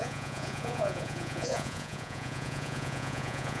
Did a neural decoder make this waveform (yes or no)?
yes